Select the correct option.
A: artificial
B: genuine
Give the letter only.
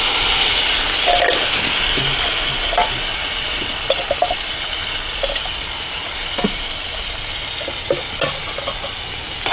B